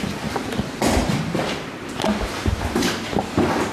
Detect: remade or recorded recorded